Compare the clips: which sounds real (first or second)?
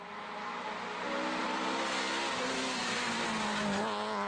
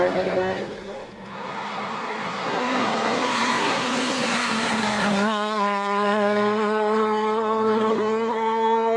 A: first